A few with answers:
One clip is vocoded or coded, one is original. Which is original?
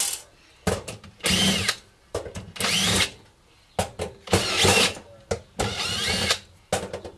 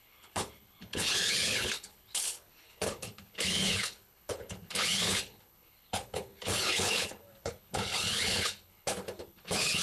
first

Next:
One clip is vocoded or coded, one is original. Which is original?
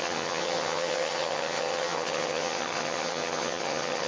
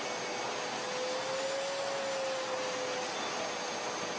second